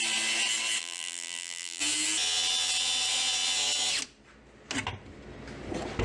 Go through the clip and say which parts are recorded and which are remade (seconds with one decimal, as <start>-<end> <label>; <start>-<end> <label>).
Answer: 0.0-0.8 recorded; 0.8-1.8 remade; 1.8-6.0 recorded